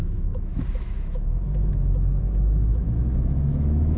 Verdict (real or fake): fake